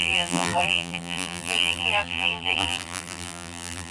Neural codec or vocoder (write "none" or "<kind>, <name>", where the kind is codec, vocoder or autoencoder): vocoder, BigVGAN v2